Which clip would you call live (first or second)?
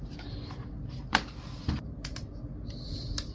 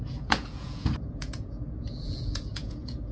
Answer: first